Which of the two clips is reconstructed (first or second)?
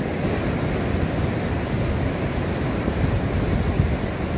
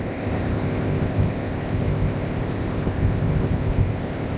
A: second